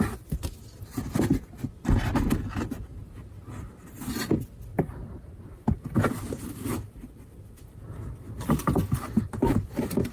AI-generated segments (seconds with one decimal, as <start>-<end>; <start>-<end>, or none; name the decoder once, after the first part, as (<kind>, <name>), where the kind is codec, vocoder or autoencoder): 4.7-5.5 (vocoder, BigVGAN v2)